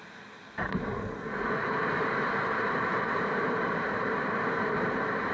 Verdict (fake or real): fake